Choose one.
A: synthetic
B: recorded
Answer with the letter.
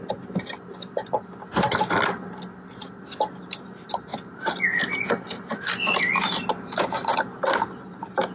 B